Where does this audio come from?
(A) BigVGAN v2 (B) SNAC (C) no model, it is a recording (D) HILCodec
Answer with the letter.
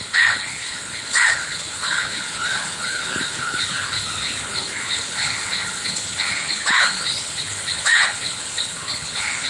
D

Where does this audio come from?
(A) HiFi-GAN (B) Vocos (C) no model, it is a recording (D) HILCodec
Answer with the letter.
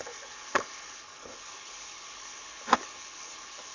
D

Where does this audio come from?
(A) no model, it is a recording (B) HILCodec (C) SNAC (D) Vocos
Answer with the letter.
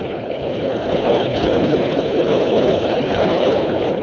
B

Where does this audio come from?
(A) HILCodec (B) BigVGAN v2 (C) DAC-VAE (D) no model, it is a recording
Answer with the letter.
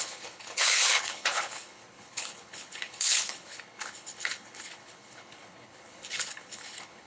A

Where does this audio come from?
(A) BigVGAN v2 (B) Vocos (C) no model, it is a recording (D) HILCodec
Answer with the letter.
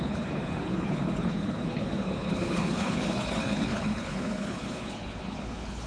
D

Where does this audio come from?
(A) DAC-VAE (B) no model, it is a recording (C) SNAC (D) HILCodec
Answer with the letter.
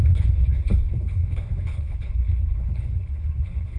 D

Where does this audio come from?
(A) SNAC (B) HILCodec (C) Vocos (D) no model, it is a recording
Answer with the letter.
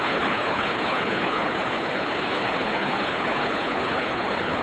B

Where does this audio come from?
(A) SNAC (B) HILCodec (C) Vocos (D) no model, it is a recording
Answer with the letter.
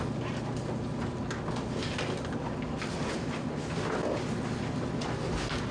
D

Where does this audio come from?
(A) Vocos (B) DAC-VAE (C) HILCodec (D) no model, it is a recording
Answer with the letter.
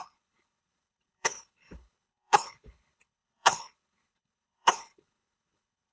C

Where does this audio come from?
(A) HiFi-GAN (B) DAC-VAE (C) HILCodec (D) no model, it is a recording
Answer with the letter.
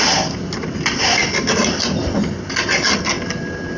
D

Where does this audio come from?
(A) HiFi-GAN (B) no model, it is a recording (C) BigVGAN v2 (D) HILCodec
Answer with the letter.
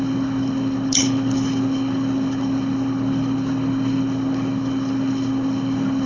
D